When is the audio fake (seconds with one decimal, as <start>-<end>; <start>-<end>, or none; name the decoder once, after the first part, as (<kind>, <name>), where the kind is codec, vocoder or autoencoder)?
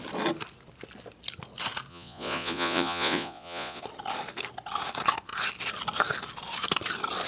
1.9-3.8 (vocoder, Vocos)